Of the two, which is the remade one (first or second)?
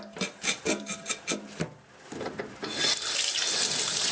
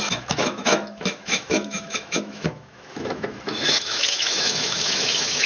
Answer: second